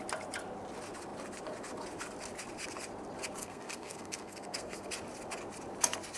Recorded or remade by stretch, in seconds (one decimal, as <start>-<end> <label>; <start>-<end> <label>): 0.0-3.4 recorded; 3.4-4.9 remade; 4.9-6.2 recorded